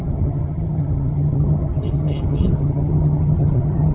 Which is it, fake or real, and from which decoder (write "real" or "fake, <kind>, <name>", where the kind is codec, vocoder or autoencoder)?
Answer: fake, vocoder, HiFi-GAN